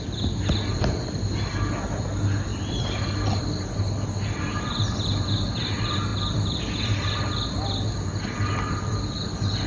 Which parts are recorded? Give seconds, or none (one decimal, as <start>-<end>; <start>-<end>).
0.0-2.5; 3.0-4.5; 5.3-9.7